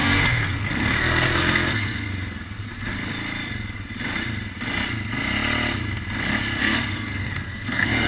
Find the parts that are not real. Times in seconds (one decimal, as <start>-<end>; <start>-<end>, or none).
0.0-2.1; 6.6-8.1